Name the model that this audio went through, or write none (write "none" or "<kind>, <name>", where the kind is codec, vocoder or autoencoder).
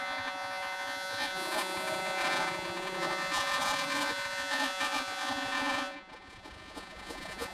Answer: vocoder, Vocos